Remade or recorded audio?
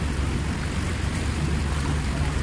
recorded